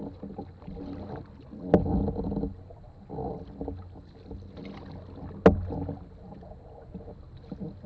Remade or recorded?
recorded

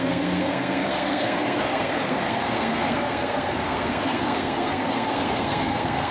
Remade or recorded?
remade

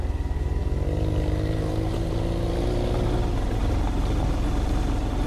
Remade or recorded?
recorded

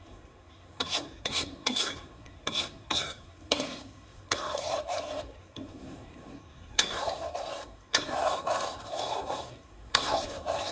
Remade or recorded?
remade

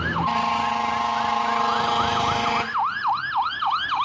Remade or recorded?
recorded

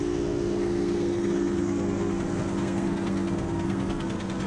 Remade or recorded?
remade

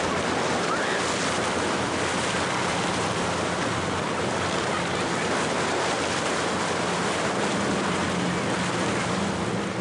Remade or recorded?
recorded